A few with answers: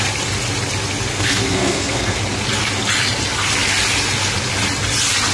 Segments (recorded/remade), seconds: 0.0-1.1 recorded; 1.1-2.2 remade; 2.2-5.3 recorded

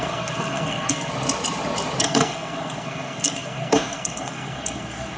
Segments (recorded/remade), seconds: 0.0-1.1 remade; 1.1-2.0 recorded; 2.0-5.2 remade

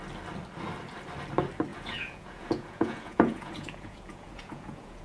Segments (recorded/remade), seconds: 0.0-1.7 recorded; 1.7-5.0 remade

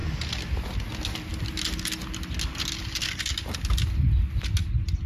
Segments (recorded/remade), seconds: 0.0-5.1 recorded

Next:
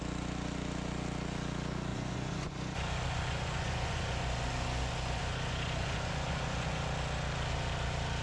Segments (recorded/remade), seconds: 0.0-1.9 recorded; 1.9-6.8 remade; 6.8-8.2 recorded